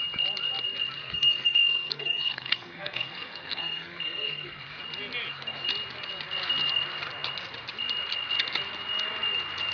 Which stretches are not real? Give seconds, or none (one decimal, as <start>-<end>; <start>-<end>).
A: 1.0-4.6